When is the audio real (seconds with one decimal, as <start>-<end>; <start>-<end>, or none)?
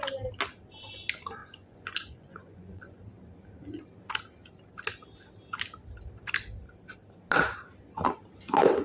0.0-1.4; 3.0-8.8